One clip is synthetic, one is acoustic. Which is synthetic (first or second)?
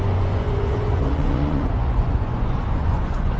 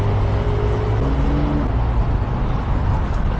first